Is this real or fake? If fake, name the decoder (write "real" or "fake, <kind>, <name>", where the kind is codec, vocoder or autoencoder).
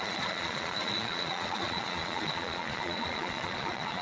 fake, vocoder, Vocos